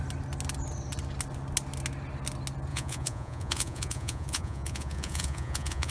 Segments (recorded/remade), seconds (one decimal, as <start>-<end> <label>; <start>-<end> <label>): 0.0-2.7 recorded; 2.7-5.9 remade